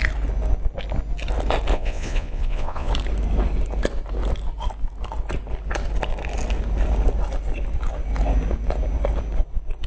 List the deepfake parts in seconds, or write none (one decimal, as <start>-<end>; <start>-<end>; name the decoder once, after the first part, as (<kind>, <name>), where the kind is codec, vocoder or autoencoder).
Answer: 1.7-2.9 (vocoder, Vocos)